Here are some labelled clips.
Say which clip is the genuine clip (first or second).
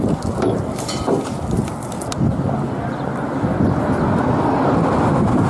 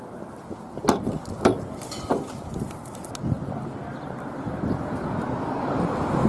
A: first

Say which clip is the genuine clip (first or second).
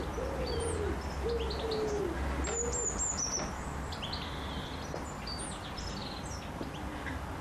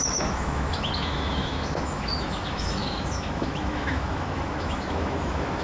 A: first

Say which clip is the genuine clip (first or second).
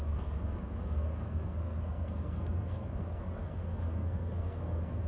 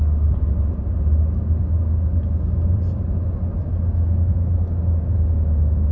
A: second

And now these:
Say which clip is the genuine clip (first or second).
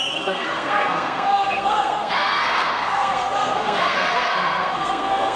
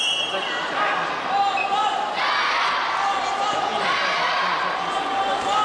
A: second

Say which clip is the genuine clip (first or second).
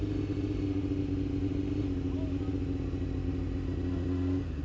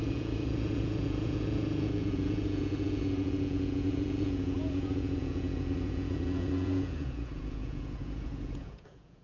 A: first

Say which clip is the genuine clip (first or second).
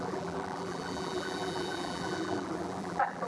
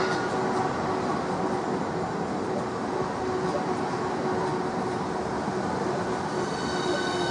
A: second